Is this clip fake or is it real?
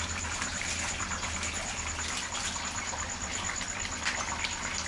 real